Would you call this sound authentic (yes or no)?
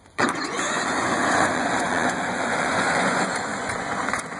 no